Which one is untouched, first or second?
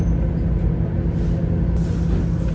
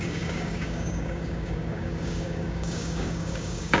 first